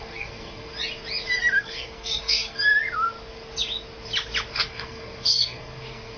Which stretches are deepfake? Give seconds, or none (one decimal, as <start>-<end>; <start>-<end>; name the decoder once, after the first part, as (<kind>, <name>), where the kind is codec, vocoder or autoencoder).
0.0-0.7 (codec, SNAC); 1.6-2.7; 4.5-6.2